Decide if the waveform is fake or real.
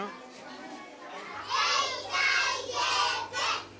real